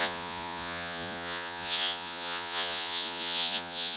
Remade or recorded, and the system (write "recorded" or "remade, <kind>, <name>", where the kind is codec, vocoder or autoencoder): remade, vocoder, Vocos